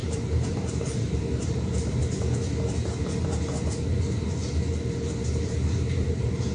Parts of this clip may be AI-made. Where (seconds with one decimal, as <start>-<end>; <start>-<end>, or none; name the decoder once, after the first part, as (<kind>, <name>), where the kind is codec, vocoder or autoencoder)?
0.0-2.0 (vocoder, BigVGAN v2); 3.7-4.4; 5.3-6.5